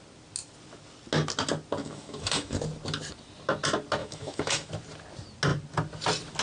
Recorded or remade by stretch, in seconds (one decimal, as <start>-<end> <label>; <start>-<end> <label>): 0.0-1.8 recorded; 1.8-2.6 remade; 2.6-4.0 recorded; 4.0-4.7 remade; 4.7-6.4 recorded